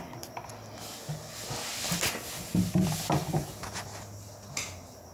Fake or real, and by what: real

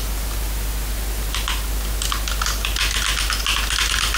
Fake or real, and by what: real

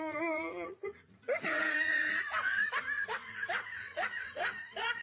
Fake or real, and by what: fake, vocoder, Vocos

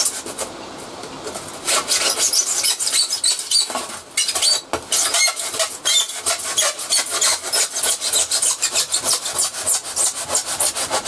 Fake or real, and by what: real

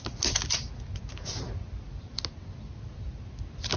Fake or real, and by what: real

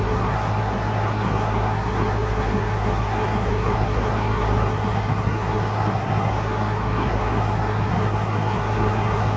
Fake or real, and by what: fake, codec, SNAC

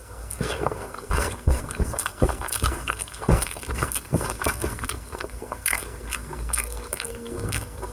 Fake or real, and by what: fake, codec, SNAC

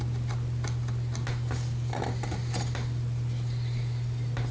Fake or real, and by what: real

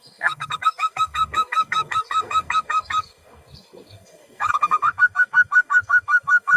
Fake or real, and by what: fake, codec, SNAC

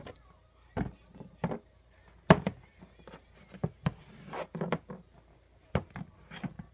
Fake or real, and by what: real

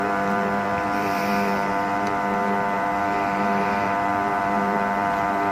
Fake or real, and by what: fake, vocoder, BigVGAN v2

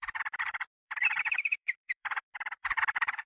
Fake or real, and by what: fake, vocoder, BigVGAN v2